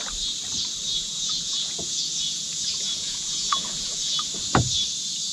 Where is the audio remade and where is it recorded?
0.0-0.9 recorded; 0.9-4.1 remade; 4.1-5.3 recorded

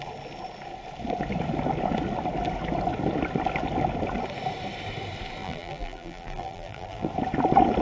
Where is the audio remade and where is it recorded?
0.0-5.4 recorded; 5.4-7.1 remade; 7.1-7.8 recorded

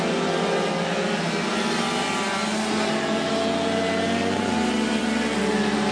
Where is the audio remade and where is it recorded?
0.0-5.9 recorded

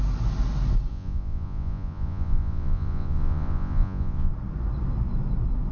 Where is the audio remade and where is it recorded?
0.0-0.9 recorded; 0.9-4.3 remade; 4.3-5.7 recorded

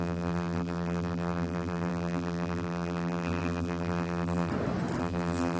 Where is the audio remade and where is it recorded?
0.0-4.5 remade; 4.5-5.0 recorded; 5.0-5.6 remade

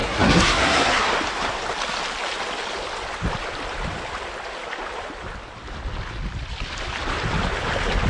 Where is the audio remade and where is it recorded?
0.0-1.1 remade; 1.1-8.1 recorded

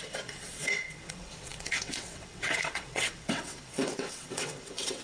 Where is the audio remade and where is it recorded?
0.0-5.0 remade

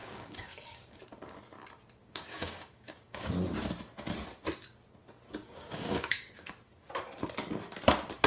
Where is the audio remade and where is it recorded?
0.0-1.0 remade; 1.0-2.0 recorded; 2.0-3.3 remade; 3.3-5.4 recorded; 5.4-6.5 remade; 6.5-8.3 recorded